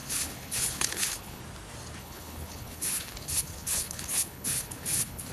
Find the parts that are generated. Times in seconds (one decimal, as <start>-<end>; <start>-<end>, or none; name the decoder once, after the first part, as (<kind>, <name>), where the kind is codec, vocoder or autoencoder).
0.0-1.4 (codec, HILCodec); 2.0-5.3